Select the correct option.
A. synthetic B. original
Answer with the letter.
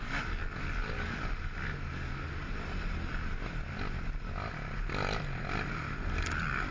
B